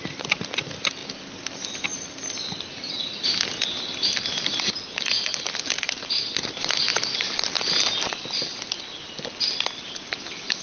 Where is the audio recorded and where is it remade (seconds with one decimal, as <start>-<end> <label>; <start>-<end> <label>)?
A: 0.0-6.9 recorded; 6.9-7.5 remade; 7.5-10.6 recorded